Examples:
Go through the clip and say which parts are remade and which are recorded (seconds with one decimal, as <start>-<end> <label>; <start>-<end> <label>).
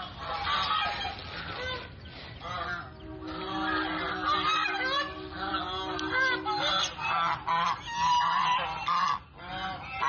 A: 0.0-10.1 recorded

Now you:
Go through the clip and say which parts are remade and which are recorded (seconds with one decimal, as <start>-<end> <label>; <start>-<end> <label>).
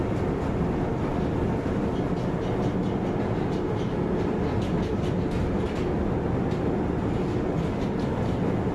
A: 0.0-8.7 recorded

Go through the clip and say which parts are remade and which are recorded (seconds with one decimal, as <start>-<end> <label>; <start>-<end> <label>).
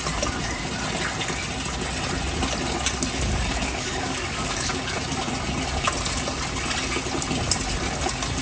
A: 0.0-3.5 recorded; 3.5-4.8 remade; 4.8-8.4 recorded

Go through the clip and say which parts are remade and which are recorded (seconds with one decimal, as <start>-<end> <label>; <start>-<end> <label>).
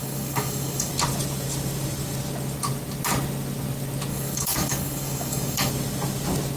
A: 0.0-0.9 remade; 0.9-4.1 recorded; 4.1-5.7 remade; 5.7-6.6 recorded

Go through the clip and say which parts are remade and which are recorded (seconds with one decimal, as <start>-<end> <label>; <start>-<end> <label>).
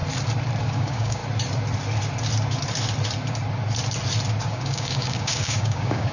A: 0.0-0.6 recorded; 0.6-1.2 remade; 1.2-4.4 recorded; 4.4-6.1 remade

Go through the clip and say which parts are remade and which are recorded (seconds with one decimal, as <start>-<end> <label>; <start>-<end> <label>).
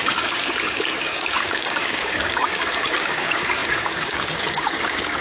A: 0.0-5.2 remade